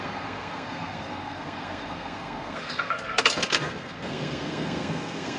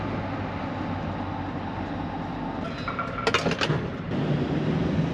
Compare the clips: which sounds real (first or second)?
second